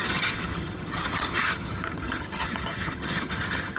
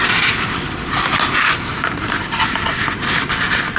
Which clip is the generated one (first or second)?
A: first